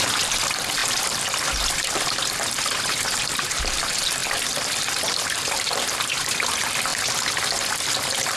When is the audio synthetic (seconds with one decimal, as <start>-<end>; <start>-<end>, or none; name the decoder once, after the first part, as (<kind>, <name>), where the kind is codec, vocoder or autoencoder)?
0.0-6.9 (vocoder, BigVGAN v2); 7.7-8.4